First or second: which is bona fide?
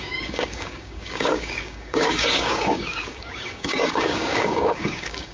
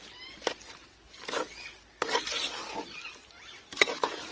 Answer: second